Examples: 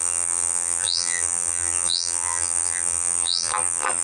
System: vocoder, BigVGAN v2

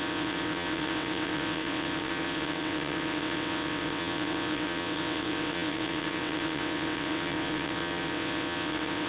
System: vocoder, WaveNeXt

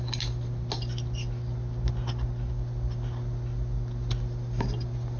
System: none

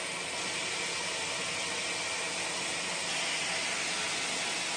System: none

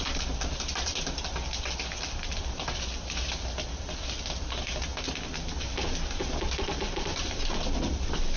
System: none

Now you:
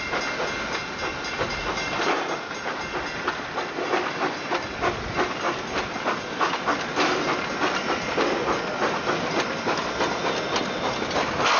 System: none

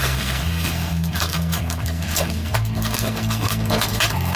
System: codec, SNAC